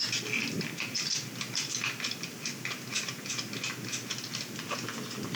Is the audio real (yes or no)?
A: yes